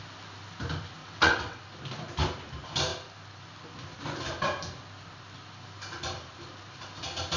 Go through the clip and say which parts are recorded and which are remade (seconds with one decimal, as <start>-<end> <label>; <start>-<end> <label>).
0.0-1.0 recorded; 1.0-1.6 remade; 1.6-7.4 recorded